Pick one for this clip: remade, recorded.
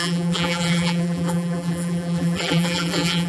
remade